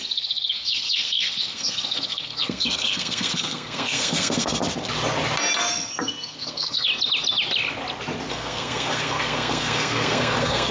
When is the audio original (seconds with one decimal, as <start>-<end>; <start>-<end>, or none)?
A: 4.6-5.6; 6.9-8.3